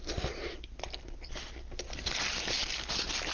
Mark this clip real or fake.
real